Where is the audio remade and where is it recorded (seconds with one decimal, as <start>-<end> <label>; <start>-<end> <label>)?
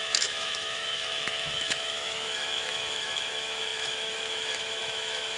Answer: 0.0-5.4 remade